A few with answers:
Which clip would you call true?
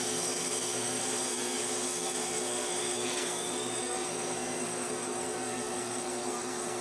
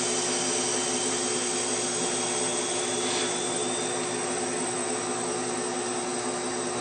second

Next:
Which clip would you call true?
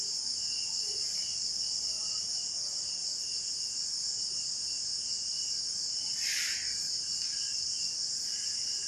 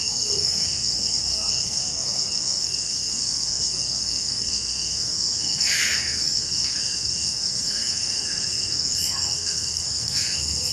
first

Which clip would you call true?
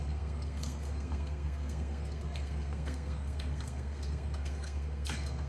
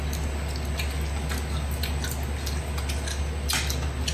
second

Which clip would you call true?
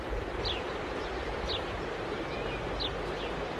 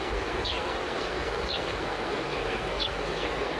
first